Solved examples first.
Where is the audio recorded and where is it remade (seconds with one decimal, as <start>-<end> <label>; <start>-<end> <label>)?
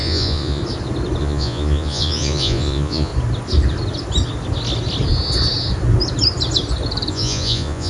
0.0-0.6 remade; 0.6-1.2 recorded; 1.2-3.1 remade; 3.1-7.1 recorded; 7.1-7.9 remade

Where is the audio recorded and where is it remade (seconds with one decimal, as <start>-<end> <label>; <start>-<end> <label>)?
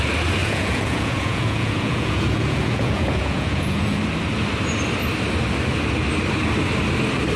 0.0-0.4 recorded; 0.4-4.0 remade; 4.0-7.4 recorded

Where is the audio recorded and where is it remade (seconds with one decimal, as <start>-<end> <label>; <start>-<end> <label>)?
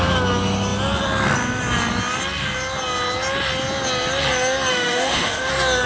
0.0-4.7 recorded; 4.7-5.5 remade; 5.5-5.9 recorded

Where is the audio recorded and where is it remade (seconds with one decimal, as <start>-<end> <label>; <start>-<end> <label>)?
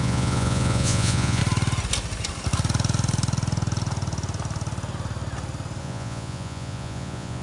0.0-1.4 remade; 1.4-5.8 recorded; 5.8-7.4 remade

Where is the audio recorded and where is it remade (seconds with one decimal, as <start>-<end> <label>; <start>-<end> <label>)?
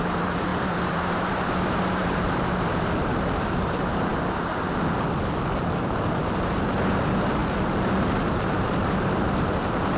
0.0-4.1 remade; 4.1-5.8 recorded; 5.8-7.4 remade; 7.4-8.0 recorded; 8.0-10.0 remade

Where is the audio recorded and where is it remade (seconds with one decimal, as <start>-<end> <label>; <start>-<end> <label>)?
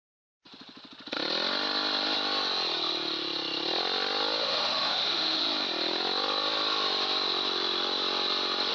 0.0-4.4 recorded; 4.4-5.4 remade; 5.4-8.7 recorded